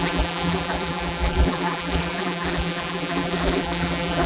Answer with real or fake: fake